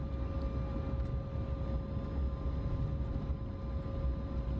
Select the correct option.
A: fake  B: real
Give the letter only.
B